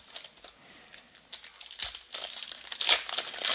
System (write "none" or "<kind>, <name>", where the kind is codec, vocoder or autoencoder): none